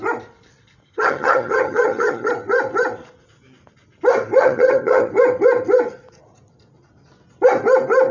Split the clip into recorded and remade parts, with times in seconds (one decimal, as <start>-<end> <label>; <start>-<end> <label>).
0.0-0.8 recorded; 0.8-2.3 remade; 2.3-4.4 recorded; 4.4-5.1 remade; 5.1-8.1 recorded